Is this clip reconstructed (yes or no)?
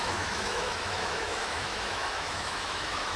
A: yes